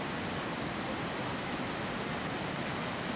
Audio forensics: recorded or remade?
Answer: recorded